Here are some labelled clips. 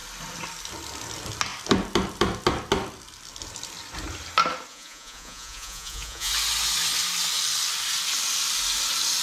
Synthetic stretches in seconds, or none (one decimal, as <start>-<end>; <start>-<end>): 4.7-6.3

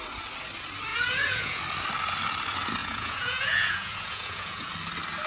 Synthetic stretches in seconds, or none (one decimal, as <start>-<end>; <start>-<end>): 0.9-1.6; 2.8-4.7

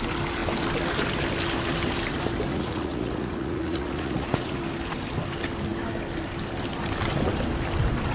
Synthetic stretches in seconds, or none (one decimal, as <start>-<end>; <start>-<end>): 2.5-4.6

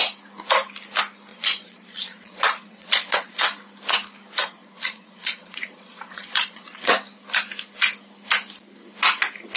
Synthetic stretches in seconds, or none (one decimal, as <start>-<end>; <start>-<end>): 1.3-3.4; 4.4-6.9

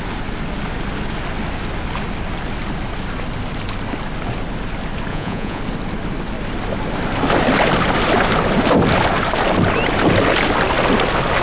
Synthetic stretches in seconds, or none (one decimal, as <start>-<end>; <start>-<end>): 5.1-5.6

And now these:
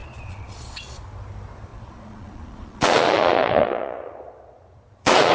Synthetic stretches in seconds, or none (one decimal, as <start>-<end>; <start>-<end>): 0.0-1.0; 1.7-5.3